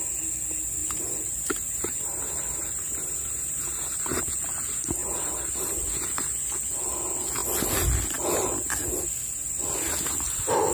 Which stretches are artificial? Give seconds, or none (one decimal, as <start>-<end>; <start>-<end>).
0.8-4.3; 5.0-5.5